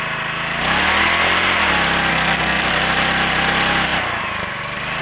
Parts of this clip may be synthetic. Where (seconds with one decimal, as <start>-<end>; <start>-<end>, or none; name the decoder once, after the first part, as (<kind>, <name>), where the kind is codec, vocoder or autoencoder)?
2.1-2.7 (codec, SNAC)